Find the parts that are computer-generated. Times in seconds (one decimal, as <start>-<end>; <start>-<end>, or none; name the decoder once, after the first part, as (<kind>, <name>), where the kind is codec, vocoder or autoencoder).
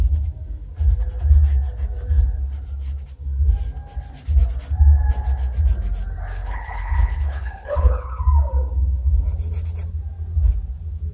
6.4-8.2 (codec, HILCodec)